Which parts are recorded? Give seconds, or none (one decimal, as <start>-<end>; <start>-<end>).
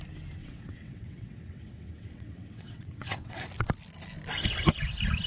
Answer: 0.0-0.4; 3.5-5.3